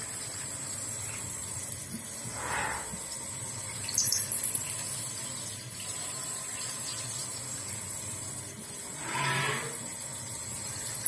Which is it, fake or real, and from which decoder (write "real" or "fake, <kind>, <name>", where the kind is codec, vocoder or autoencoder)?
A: fake, vocoder, BigVGAN v2